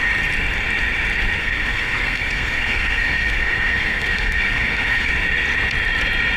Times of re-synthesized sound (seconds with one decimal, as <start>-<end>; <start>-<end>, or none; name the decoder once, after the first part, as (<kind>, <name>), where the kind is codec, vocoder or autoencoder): 1.4-5.1 (codec, SNAC)